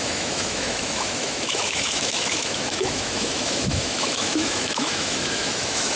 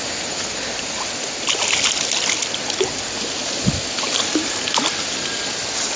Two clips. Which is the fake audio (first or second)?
first